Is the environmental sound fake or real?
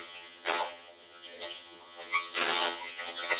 fake